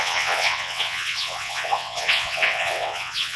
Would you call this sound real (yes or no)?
no